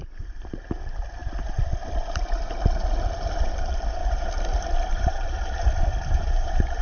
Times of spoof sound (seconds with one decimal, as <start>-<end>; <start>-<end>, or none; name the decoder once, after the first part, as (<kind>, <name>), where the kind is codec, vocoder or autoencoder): 0.0-1.2 (vocoder, BigVGAN v2); 3.4-4.0; 4.9-6.8